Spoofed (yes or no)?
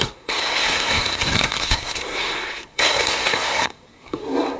yes